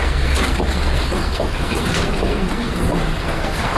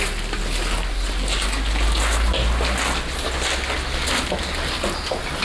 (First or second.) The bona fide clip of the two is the second